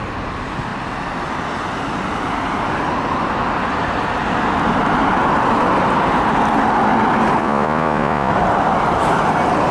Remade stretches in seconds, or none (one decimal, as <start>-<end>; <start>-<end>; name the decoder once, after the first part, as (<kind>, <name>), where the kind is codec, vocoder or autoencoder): 7.4-8.3 (vocoder, Vocos)